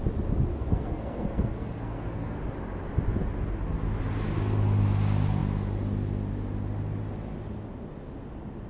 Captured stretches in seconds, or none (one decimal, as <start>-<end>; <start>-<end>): 0.0-0.5; 2.4-8.7